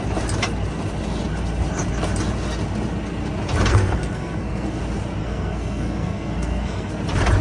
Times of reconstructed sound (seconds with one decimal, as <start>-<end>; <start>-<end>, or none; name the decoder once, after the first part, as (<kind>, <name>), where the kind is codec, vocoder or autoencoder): 3.7-4.8 (codec, SNAC); 5.2-6.9